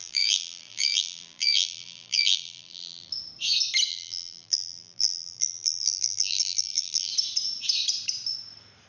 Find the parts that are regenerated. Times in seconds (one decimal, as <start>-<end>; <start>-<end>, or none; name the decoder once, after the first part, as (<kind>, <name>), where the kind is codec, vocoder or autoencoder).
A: 0.0-3.1 (vocoder, BigVGAN v2); 3.9-7.1